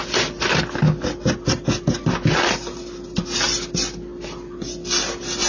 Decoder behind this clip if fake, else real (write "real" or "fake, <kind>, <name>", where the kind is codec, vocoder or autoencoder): real